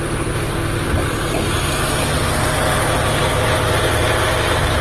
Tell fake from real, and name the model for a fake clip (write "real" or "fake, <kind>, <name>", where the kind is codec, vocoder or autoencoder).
real